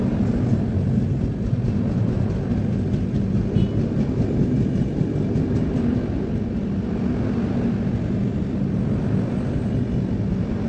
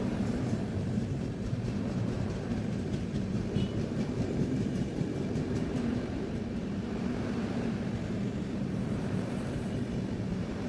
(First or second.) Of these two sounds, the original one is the first